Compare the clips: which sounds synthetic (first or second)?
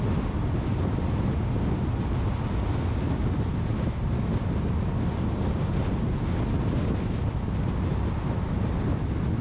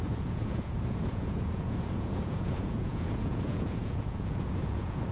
second